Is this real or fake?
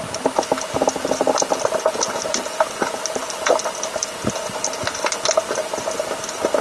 real